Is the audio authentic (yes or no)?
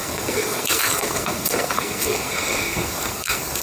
no